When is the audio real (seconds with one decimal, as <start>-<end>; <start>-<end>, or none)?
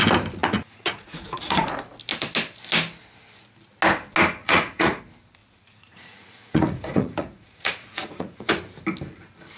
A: 0.0-0.4; 1.7-4.4; 5.0-5.4; 8.5-9.6